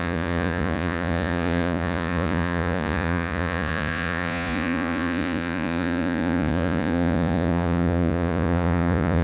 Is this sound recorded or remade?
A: remade